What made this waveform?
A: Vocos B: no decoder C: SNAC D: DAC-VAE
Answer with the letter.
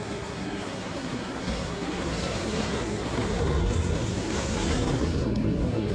C